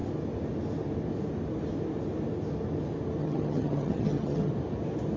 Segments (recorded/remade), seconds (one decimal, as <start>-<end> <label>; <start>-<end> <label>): 0.0-3.2 recorded; 3.2-4.5 remade; 4.5-5.2 recorded